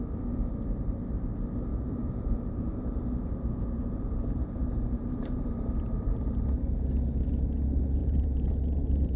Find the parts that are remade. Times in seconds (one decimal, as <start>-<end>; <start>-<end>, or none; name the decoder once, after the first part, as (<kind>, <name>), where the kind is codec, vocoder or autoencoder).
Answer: 1.7-6.6 (vocoder, BigVGAN v2); 8.0-8.5